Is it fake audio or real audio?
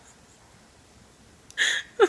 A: real